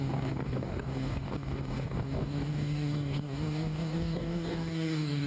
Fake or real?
fake